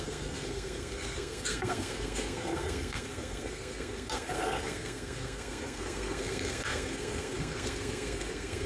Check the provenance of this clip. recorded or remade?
remade